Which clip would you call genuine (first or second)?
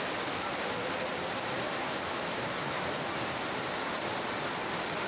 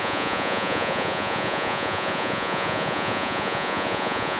first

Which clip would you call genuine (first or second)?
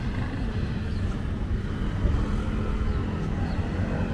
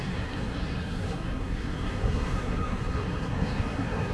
first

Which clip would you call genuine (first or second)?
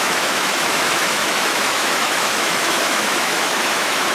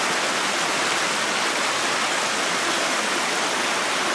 second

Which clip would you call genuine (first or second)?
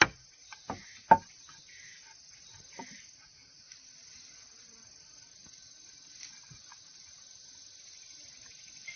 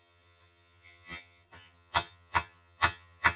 first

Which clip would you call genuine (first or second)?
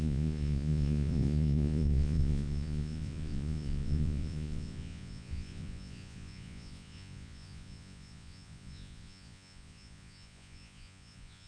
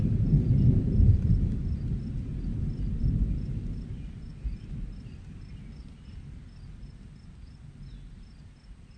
second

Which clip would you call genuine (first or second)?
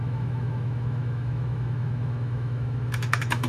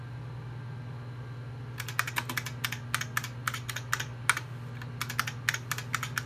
second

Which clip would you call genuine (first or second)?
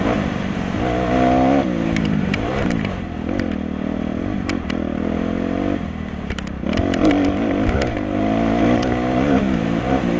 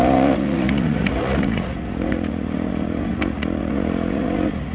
first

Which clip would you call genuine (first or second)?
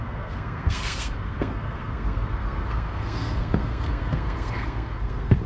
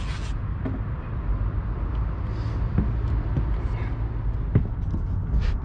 second